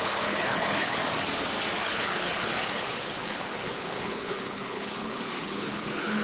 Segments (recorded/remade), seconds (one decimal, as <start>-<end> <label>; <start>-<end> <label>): 0.0-1.0 remade; 1.0-1.8 recorded; 1.8-6.2 remade